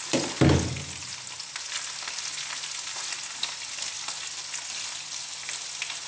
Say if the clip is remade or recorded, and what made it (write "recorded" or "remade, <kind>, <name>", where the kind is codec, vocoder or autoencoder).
recorded